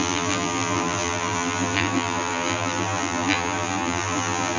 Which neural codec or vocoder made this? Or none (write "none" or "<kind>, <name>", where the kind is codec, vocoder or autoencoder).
vocoder, BigVGAN v2